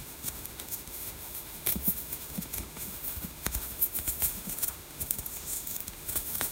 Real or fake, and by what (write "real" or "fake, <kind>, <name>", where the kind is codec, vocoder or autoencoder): fake, autoencoder, DAC-VAE